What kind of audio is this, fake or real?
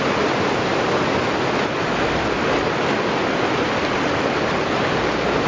real